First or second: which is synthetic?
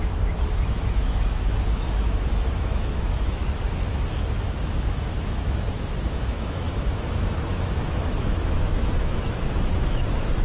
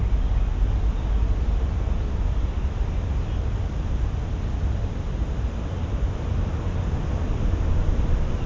first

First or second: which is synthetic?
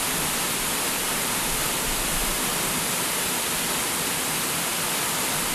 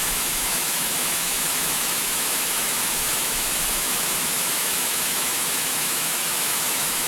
second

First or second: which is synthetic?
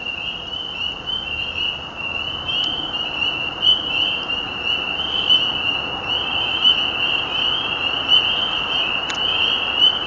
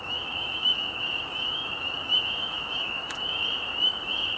second